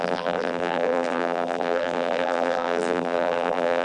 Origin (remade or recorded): remade